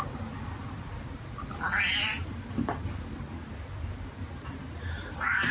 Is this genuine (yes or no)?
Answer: yes